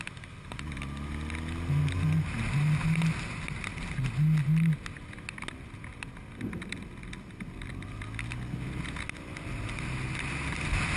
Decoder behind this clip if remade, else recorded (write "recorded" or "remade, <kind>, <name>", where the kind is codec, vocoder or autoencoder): recorded